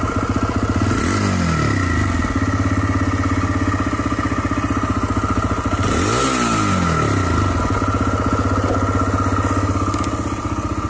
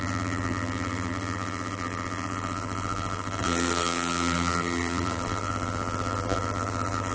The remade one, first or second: second